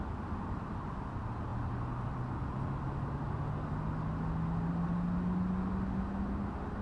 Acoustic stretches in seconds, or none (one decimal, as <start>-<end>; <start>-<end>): 0.0-6.8